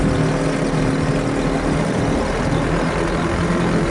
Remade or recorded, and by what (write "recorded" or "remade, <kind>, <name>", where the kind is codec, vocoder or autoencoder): recorded